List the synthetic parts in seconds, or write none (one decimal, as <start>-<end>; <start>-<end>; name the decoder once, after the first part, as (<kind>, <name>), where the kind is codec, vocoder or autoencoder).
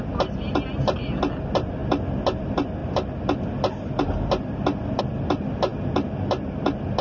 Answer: none